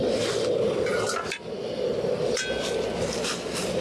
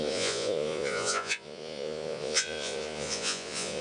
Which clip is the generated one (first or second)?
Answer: second